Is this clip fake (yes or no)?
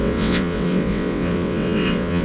yes